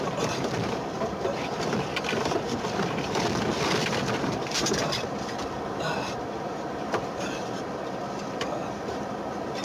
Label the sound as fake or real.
fake